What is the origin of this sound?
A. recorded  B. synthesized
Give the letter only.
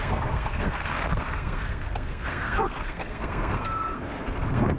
B